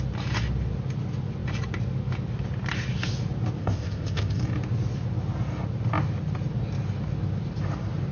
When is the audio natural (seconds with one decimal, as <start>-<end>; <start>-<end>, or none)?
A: 0.0-3.6; 4.4-8.1